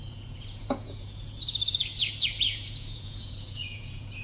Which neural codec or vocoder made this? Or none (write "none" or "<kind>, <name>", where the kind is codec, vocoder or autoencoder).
vocoder, Vocos